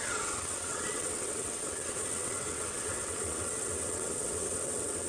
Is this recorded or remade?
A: remade